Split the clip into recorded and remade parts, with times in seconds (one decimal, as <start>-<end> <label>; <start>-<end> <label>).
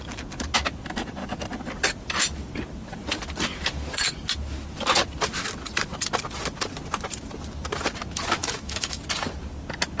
0.0-8.4 recorded; 8.4-9.0 remade; 9.0-10.0 recorded